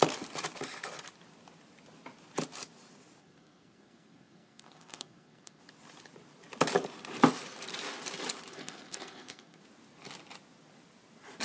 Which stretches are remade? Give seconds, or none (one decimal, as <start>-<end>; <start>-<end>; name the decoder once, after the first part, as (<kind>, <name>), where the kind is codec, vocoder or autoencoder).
3.2-5.6 (codec, SNAC); 8.5-9.6